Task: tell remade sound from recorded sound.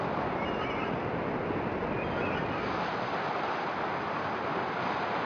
recorded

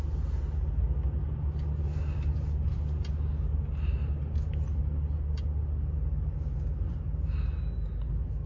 recorded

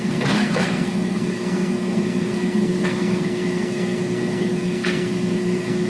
remade